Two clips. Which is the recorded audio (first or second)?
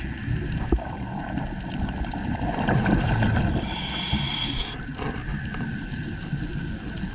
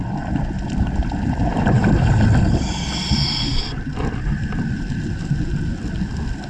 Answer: first